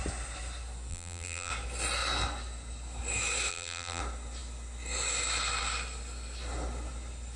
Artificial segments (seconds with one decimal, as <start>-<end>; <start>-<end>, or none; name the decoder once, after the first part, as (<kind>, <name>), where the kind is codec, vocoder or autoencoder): 0.9-1.5 (vocoder, BigVGAN v2); 3.5-4.0